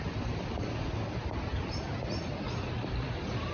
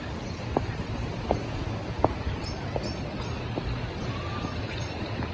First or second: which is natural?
second